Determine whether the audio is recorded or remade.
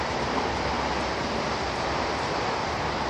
recorded